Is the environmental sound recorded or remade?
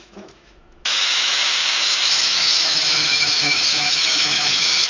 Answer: remade